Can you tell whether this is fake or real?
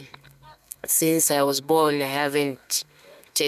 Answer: fake